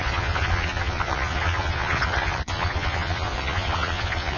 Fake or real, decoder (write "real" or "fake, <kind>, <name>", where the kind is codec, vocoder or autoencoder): fake, vocoder, Vocos